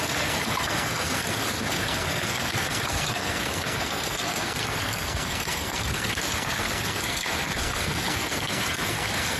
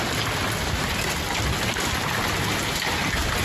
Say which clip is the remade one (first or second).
first